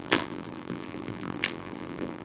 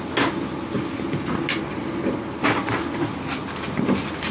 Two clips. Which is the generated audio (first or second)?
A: first